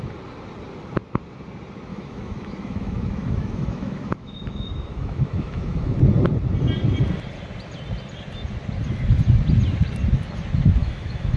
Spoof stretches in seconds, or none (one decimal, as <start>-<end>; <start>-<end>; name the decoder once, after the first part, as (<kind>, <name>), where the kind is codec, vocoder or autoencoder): 1.9-6.0 (autoencoder, DAC-VAE); 10.8-11.4